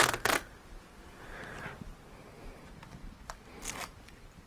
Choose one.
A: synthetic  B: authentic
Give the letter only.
B